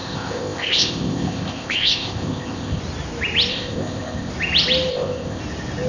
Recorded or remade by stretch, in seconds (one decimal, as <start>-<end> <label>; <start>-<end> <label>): 0.0-2.8 remade; 2.8-3.5 recorded; 3.5-4.3 remade; 4.3-4.9 recorded; 4.9-5.4 remade; 5.4-5.9 recorded